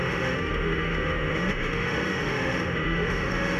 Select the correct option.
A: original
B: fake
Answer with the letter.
B